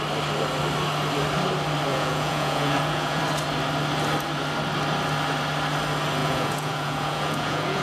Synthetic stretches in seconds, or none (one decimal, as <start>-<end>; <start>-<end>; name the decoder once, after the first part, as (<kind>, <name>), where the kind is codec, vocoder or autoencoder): 1.9-3.2 (vocoder, Vocos); 6.2-7.8

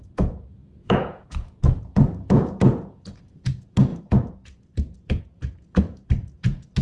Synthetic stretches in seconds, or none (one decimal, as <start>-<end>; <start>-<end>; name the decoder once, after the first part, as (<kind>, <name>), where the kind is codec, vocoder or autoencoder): 0.0-6.8 (vocoder, Vocos)

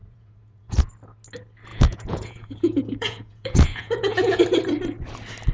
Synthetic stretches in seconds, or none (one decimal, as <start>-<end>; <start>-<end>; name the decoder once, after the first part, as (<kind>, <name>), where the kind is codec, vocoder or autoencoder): 0.0-0.9 (vocoder, Vocos); 1.7-4.4

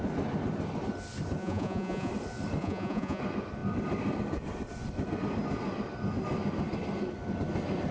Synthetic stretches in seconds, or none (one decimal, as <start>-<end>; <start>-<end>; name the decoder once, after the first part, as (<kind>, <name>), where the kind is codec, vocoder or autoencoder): 1.4-2.1 (vocoder, Vocos); 2.6-3.2

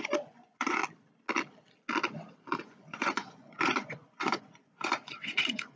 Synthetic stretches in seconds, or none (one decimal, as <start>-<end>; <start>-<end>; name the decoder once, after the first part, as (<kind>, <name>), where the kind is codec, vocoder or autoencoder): 0.0-0.8 (vocoder, Vocos); 2.6-5.8

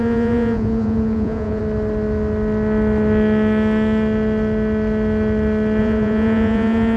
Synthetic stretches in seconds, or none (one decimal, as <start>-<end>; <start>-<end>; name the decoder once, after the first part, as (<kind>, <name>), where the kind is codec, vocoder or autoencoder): 0.0-1.6 (vocoder, Vocos); 5.8-7.0

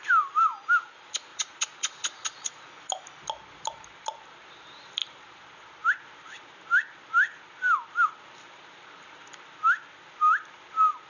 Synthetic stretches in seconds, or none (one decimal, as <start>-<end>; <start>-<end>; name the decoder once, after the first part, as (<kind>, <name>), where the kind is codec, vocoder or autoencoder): 1.3-2.7 (vocoder, Vocos)

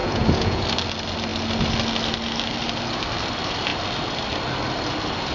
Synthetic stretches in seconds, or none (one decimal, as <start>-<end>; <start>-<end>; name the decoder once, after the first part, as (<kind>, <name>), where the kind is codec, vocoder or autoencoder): 0.0-0.6 (vocoder, Vocos)